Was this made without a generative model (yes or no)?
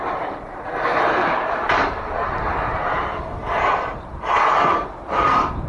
no